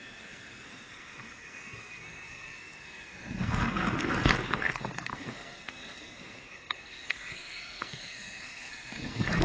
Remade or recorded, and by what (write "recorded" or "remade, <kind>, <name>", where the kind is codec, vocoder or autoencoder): remade, codec, SNAC